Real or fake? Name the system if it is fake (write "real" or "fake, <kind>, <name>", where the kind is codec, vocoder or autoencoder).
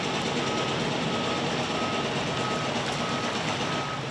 real